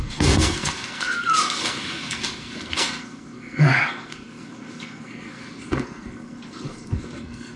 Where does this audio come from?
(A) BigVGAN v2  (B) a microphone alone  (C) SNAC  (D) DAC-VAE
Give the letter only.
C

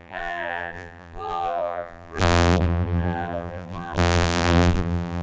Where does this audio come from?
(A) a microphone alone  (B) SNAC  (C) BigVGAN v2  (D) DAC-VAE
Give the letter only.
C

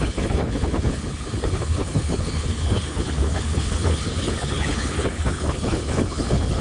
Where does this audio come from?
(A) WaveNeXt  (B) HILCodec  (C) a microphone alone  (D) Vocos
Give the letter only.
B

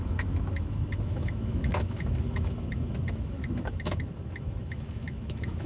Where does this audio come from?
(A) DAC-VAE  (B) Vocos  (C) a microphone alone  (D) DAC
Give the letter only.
A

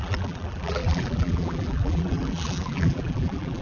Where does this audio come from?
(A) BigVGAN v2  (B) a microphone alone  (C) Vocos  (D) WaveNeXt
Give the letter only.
A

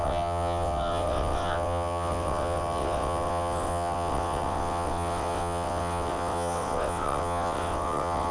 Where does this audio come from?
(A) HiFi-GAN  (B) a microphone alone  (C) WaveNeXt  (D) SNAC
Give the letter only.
C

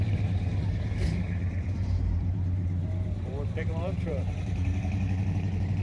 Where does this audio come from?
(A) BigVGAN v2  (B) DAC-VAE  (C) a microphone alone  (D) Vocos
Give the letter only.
A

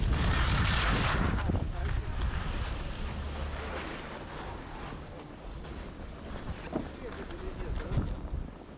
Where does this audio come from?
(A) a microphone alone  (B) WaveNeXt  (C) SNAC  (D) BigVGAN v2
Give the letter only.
A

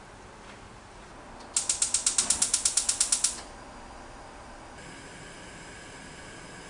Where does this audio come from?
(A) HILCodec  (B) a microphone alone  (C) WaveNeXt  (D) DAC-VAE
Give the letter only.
B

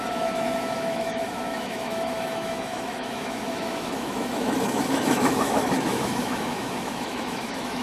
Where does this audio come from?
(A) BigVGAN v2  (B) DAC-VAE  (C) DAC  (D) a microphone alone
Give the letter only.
B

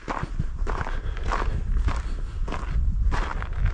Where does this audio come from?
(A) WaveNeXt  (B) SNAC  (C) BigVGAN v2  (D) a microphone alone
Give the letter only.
D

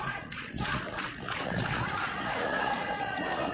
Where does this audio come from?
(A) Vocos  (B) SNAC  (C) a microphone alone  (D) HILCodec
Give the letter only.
A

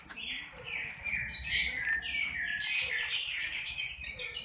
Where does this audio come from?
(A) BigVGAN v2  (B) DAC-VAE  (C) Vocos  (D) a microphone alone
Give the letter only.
A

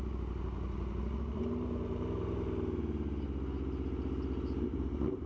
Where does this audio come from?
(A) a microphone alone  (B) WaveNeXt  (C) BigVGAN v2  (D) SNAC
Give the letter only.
A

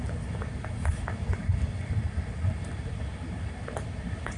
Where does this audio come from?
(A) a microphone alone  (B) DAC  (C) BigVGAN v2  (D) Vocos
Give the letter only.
A